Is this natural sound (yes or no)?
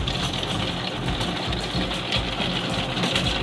yes